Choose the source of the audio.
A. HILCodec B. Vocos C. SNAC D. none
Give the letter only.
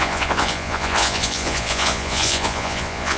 B